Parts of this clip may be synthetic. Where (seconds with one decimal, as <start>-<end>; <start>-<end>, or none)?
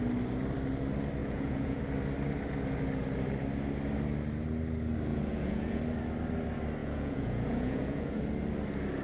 1.2-1.8; 5.1-5.8; 6.8-8.2